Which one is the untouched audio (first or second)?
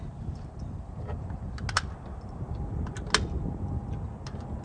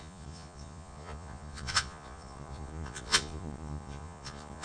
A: first